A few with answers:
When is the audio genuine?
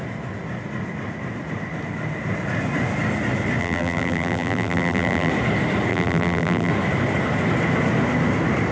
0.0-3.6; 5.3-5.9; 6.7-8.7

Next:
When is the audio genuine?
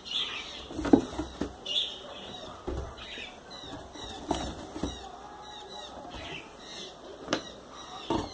0.0-7.1; 7.7-8.3